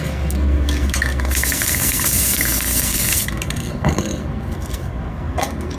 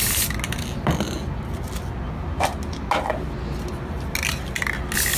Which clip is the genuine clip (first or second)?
second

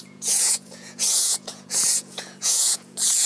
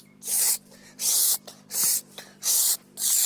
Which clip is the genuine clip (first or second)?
second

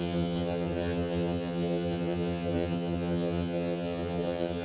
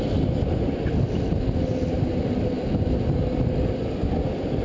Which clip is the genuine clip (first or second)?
second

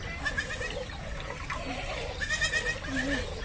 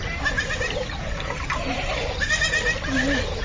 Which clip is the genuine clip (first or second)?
first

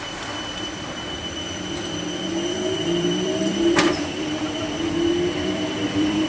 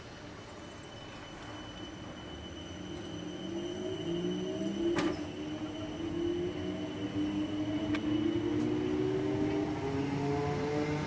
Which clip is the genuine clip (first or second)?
second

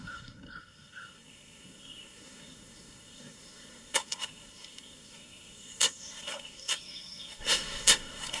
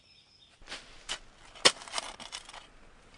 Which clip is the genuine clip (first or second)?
second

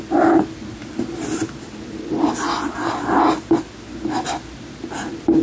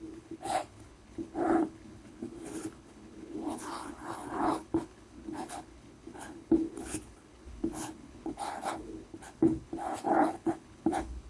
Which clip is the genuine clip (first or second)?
first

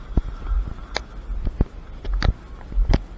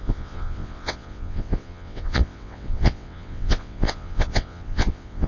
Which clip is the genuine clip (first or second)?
first